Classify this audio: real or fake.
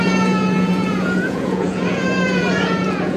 fake